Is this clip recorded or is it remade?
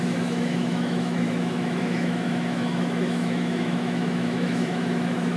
remade